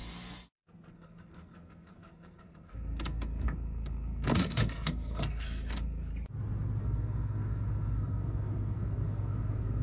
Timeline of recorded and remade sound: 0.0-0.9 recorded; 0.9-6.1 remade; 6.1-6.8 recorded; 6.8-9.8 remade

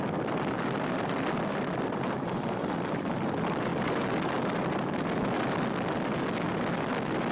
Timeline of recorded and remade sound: 0.0-7.3 recorded

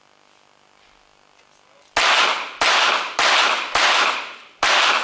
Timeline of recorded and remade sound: 0.0-5.0 recorded